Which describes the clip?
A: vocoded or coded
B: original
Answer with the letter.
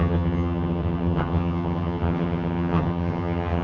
A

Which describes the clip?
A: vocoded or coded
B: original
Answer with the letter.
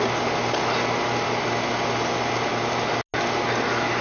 B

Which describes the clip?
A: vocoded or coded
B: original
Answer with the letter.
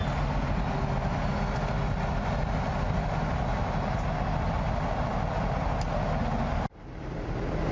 B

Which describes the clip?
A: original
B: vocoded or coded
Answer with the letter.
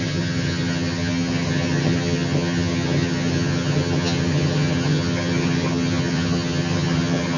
B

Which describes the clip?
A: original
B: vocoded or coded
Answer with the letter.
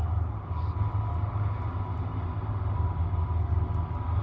A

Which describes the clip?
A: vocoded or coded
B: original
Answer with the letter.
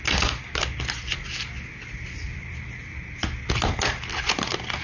B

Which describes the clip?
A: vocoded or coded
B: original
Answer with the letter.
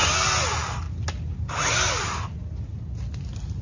B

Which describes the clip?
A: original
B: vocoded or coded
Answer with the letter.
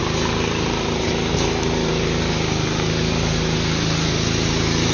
A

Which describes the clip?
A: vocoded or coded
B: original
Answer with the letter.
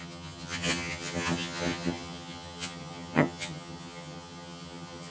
A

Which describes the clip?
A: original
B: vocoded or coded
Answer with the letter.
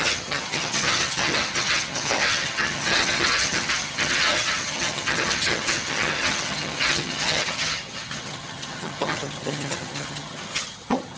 B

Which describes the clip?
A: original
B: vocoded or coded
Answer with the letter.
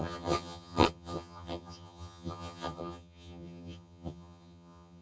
B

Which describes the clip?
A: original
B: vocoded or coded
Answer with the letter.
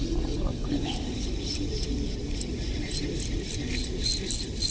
A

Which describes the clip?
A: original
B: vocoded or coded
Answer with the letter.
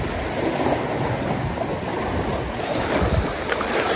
A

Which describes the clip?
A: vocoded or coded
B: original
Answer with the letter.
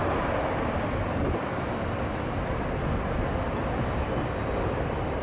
B